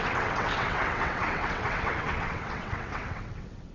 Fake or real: fake